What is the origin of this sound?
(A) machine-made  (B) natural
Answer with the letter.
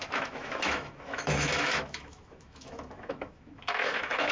A